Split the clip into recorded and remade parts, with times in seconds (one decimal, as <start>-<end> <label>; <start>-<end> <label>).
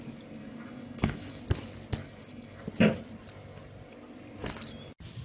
0.0-0.4 recorded; 0.4-1.4 remade; 1.4-2.0 recorded; 2.0-2.6 remade; 2.6-5.2 recorded